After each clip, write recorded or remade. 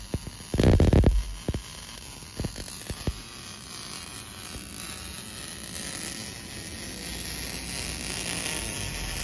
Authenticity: recorded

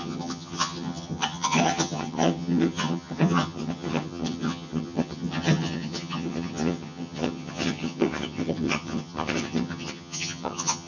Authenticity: remade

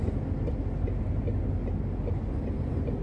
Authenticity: recorded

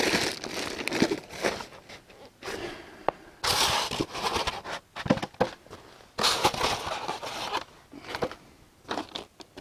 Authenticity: recorded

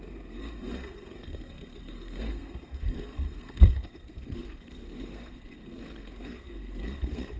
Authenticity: remade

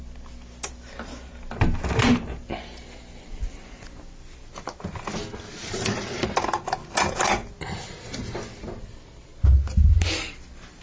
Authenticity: recorded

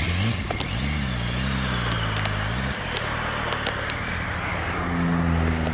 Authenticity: recorded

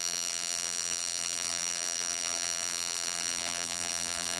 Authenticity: remade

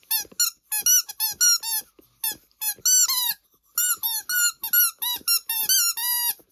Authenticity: recorded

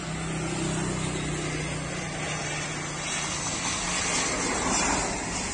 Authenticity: recorded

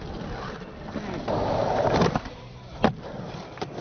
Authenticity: recorded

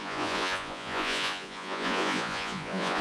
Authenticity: remade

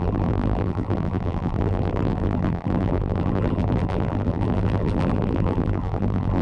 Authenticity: remade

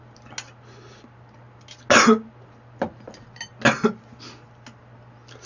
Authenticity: recorded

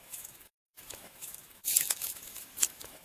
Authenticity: remade